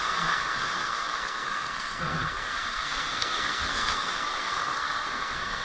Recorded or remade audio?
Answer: remade